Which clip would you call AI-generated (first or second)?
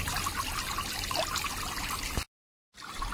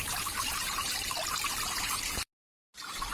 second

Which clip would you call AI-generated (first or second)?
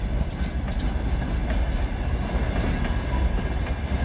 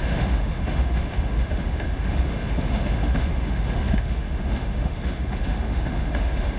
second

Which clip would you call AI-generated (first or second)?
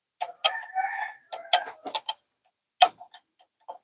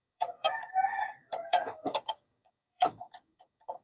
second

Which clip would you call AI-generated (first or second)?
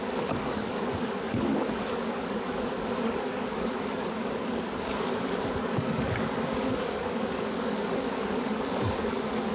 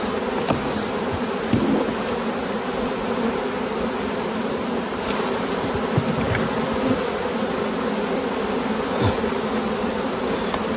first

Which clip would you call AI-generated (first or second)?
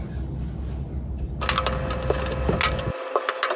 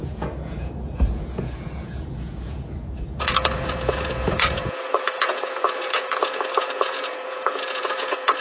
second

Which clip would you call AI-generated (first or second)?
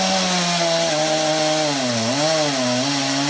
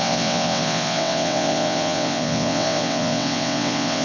second